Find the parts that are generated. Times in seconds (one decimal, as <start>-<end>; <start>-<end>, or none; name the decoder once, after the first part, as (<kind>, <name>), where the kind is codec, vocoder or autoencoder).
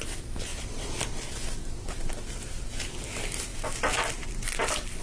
0.5-1.1 (vocoder, BigVGAN v2)